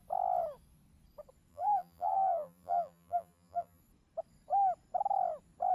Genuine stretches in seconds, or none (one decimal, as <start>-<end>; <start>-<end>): 0.0-1.5; 3.8-5.7